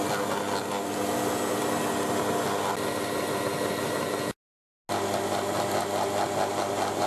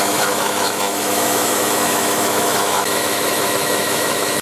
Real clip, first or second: first